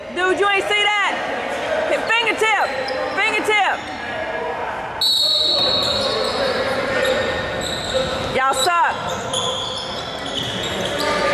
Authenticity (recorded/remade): recorded